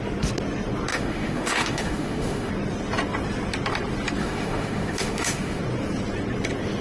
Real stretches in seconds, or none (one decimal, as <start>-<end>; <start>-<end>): 0.0-0.9; 2.5-4.2; 5.6-6.8